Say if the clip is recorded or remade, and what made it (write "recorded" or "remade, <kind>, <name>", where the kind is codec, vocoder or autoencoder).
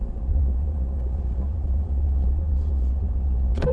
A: remade, vocoder, Vocos